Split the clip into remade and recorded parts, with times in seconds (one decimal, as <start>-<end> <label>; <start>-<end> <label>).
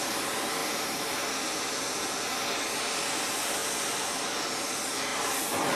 0.0-5.8 recorded